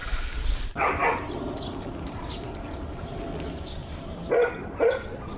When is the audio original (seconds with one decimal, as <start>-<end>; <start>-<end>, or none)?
3.2-3.8; 4.8-5.4